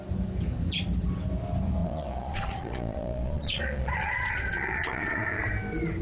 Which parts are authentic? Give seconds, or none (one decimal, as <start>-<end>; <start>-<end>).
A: 0.0-1.8; 5.4-6.0